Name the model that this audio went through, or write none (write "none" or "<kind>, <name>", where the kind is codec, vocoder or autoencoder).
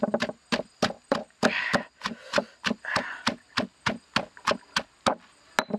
none